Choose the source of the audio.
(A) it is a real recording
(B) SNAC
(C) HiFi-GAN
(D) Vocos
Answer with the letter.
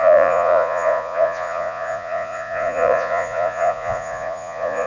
D